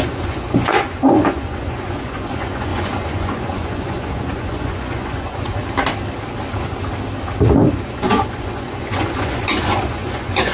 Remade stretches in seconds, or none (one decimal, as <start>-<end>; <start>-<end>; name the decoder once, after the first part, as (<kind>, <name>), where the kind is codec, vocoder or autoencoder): 0.0-5.6 (vocoder, Vocos); 7.7-10.5